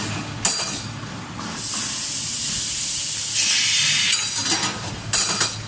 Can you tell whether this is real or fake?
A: real